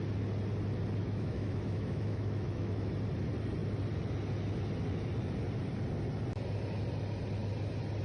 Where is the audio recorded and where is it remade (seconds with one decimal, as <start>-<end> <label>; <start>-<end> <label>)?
0.0-1.0 recorded; 1.0-2.9 remade; 2.9-8.0 recorded